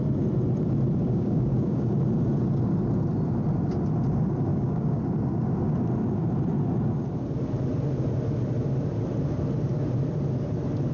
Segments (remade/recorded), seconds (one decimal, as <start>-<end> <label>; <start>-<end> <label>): 0.0-1.0 recorded; 1.0-1.9 remade; 1.9-4.5 recorded; 4.5-5.0 remade; 5.0-10.9 recorded